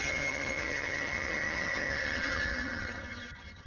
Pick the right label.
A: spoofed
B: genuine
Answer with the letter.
A